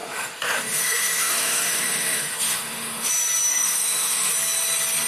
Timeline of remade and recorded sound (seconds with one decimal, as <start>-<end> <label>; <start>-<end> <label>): 0.0-3.1 remade; 3.1-3.5 recorded; 3.5-4.3 remade; 4.3-5.1 recorded

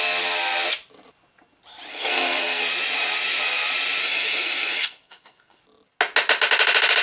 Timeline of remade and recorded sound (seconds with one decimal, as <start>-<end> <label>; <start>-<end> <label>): 0.0-1.9 recorded; 1.9-2.6 remade; 2.6-4.0 recorded; 4.0-5.6 remade; 5.6-7.0 recorded

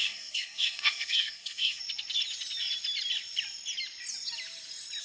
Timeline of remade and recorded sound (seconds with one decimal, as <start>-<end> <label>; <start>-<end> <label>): 0.0-1.8 remade; 1.8-5.0 recorded

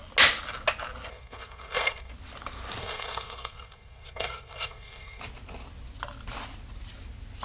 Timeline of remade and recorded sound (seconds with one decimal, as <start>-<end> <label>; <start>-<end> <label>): 0.0-1.1 recorded; 1.1-2.1 remade; 2.1-2.8 recorded; 2.8-5.2 remade; 5.2-7.4 recorded